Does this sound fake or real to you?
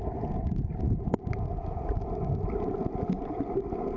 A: real